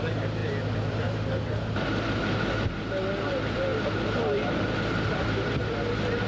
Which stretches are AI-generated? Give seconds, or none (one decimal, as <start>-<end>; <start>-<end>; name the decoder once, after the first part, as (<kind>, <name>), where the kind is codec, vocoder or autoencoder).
3.7-5.6 (vocoder, BigVGAN v2)